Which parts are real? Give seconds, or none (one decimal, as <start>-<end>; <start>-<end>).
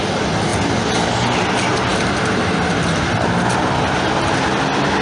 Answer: 0.0-5.0